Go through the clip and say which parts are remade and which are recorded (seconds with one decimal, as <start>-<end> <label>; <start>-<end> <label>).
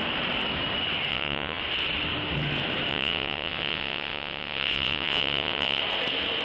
0.0-1.1 recorded; 1.1-1.6 remade; 1.6-2.9 recorded; 2.9-5.8 remade; 5.8-6.4 recorded